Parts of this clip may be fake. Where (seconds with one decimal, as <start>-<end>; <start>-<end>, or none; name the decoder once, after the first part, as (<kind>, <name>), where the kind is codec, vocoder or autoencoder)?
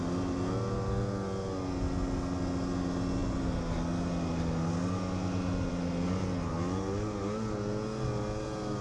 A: none